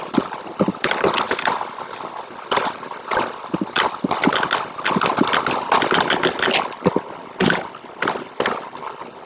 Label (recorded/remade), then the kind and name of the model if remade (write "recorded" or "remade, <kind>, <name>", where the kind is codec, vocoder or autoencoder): recorded